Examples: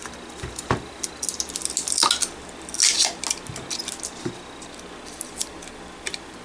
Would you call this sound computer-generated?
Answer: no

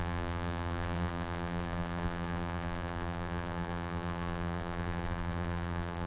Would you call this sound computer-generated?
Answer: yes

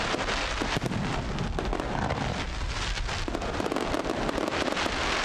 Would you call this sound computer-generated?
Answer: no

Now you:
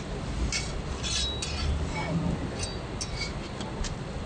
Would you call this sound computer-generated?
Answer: no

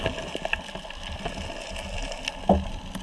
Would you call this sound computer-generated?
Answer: no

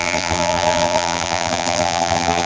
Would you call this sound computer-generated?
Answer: yes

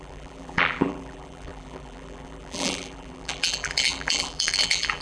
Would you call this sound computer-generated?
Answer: yes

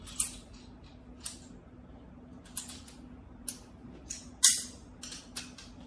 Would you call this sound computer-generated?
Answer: no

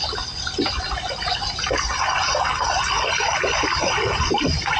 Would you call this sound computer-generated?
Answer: no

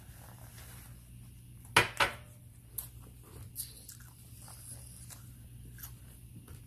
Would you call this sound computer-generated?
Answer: no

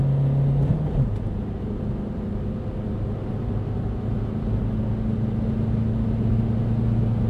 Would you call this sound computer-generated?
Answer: no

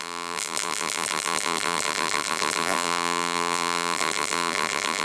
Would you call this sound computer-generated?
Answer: yes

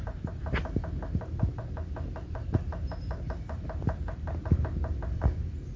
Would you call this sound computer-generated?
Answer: no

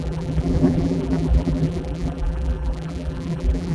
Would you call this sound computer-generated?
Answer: yes